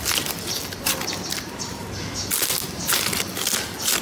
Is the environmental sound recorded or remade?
recorded